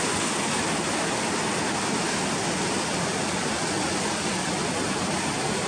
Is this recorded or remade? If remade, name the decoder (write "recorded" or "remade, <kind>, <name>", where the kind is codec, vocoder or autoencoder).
recorded